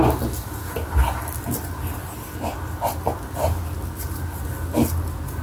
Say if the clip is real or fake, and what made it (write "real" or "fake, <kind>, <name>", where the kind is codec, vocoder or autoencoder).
real